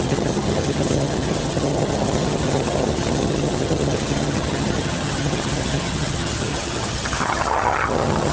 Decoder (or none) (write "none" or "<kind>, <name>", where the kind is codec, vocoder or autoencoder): vocoder, HiFi-GAN